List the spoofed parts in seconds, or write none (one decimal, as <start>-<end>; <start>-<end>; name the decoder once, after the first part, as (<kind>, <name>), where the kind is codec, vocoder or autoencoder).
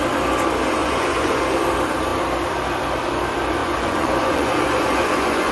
0.8-1.4 (vocoder, Vocos); 3.6-5.5